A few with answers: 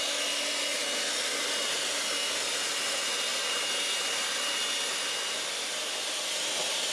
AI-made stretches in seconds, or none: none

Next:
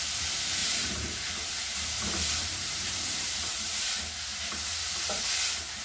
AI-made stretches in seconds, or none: 0.6-3.8; 4.3-5.2

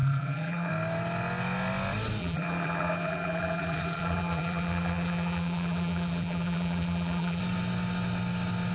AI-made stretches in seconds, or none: 0.0-0.7; 2.2-7.4

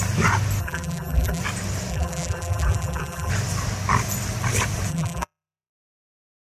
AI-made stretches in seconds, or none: 0.6-1.4; 1.9-3.3; 4.9-5.7

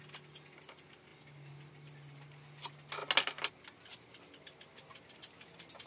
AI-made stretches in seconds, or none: none

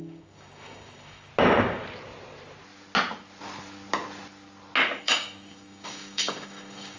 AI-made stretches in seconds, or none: 0.0-1.3; 5.0-7.0